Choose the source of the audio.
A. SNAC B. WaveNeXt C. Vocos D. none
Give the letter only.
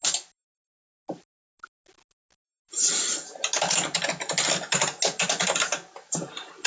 D